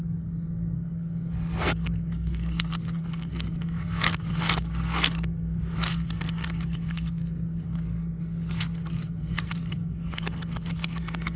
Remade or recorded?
remade